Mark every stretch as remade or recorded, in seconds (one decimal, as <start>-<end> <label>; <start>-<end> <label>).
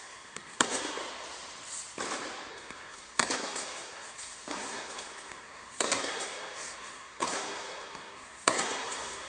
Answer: 0.0-1.0 remade; 1.0-2.5 recorded; 2.5-9.3 remade